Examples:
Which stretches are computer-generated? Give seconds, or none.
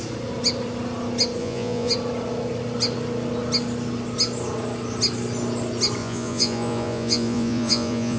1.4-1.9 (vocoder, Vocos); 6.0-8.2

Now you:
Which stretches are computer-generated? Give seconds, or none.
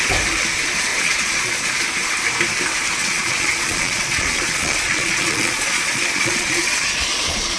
0.9-1.6 (vocoder, Vocos); 3.0-7.6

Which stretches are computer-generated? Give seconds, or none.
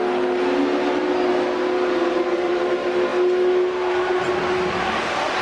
none